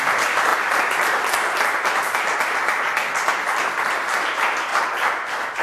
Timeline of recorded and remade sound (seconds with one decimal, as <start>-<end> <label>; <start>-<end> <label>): 0.0-3.3 recorded; 3.3-3.9 remade; 3.9-5.6 recorded